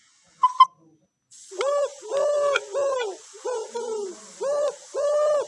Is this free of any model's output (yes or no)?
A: yes